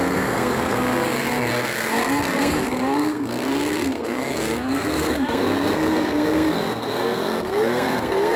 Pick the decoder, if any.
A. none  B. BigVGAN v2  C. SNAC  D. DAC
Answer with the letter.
C